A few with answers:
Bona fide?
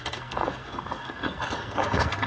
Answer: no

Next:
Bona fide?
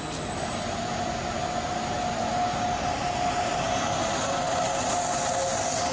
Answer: yes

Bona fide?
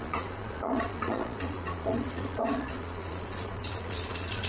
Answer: no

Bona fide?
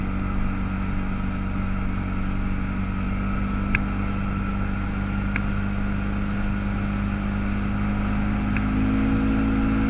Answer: yes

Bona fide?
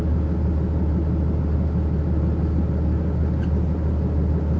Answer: yes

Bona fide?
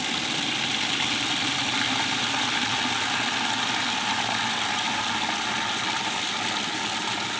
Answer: yes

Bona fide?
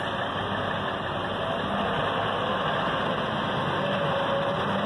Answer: yes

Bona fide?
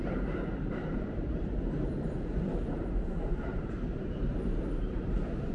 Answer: no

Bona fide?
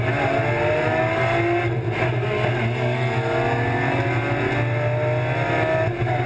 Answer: yes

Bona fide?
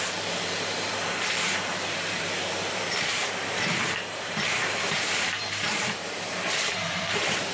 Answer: no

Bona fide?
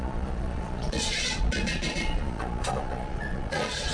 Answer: no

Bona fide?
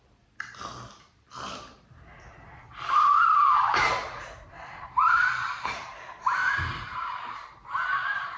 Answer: yes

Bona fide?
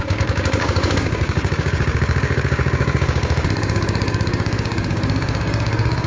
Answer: no